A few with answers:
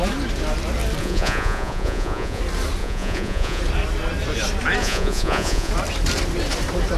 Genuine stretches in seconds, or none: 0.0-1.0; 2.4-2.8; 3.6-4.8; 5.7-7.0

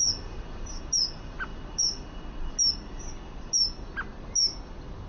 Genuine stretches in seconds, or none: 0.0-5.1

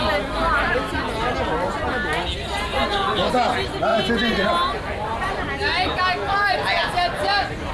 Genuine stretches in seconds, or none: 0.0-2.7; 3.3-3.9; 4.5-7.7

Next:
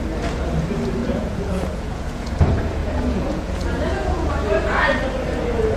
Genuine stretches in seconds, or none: 0.0-1.0; 2.3-2.8; 4.3-5.8